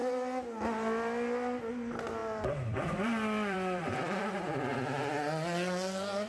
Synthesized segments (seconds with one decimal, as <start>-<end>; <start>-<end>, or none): 2.2-4.2

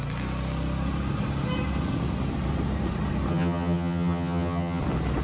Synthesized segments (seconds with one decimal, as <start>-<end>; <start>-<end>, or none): 3.3-4.8

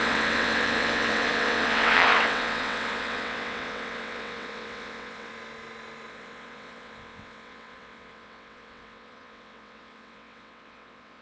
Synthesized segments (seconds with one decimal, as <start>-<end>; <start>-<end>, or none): 0.0-5.3; 6.1-11.2

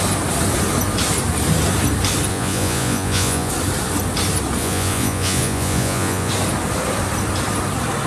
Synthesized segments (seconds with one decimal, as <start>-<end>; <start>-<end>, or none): 2.3-3.5; 4.6-6.3